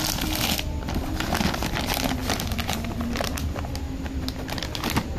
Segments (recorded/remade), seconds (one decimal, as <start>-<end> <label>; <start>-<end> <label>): 0.0-5.2 recorded